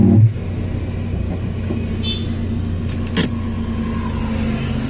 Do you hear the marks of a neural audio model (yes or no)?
no